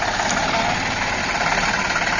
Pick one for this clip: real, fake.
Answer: real